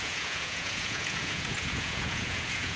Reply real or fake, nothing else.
fake